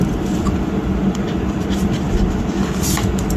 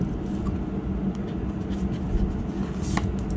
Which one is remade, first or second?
first